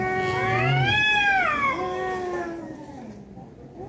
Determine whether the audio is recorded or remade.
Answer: recorded